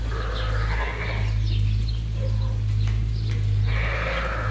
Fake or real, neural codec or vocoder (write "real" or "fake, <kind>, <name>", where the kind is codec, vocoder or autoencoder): real